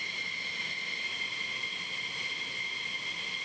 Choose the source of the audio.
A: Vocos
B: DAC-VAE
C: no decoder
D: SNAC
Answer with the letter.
C